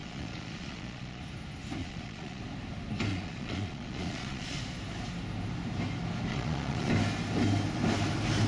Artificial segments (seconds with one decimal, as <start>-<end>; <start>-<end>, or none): 0.0-1.2; 1.8-2.4; 3.1-4.6; 6.3-6.9